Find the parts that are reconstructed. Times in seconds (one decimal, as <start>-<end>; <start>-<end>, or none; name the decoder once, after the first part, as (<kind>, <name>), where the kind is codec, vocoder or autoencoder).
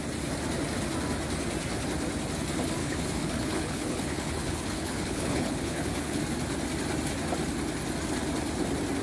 2.8-6.2 (codec, HILCodec)